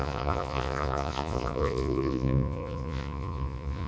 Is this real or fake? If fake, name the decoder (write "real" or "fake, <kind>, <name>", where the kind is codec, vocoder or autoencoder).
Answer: fake, vocoder, Vocos